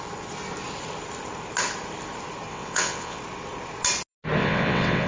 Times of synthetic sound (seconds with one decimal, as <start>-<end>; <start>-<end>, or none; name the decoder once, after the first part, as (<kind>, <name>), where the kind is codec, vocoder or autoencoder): 2.5-3.2 (vocoder, WaveNeXt); 4.4-5.1